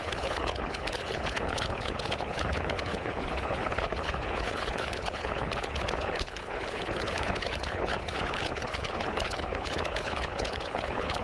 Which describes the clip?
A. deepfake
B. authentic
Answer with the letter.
A